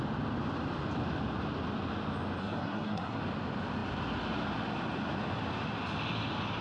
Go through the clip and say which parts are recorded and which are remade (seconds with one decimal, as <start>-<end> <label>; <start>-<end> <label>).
0.0-2.4 recorded; 2.4-3.2 remade; 3.2-6.6 recorded